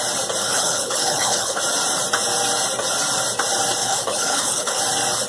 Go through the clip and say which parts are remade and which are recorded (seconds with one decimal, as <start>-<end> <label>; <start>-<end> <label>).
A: 0.0-0.4 recorded; 0.4-1.6 remade; 1.6-3.8 recorded; 3.8-4.8 remade; 4.8-5.3 recorded